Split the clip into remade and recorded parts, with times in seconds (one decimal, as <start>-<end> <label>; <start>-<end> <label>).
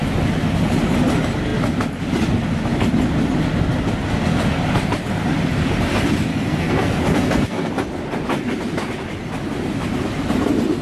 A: 0.0-6.3 recorded; 6.3-7.7 remade; 7.7-10.8 recorded